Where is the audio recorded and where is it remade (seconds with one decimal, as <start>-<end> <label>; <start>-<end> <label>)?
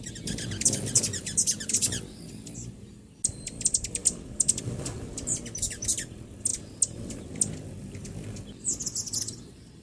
0.0-9.8 recorded